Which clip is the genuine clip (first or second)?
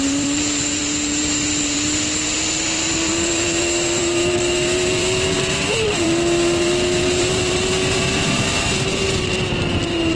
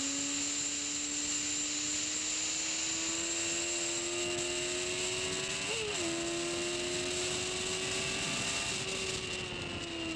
second